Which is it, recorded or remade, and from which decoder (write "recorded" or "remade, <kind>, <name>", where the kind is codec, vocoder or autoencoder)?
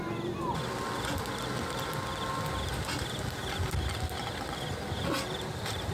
recorded